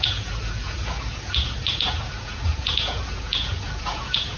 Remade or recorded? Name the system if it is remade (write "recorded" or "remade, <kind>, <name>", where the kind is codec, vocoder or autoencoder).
remade, vocoder, Vocos